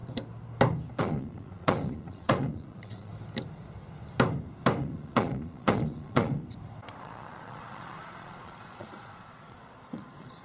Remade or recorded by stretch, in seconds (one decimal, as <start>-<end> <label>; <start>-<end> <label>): 0.0-1.0 recorded; 1.0-3.1 remade; 3.1-4.8 recorded; 4.8-6.4 remade; 6.4-7.0 recorded; 7.0-10.4 remade